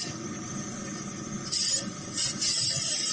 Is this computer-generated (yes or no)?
no